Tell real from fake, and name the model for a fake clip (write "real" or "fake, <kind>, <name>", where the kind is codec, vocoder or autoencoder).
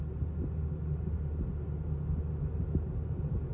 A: real